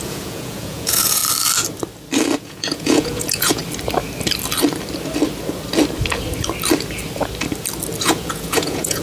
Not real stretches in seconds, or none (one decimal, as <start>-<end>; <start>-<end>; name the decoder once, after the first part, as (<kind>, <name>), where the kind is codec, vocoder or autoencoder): 0.0-1.2 (vocoder, Vocos); 2.4-3.6; 8.0-9.0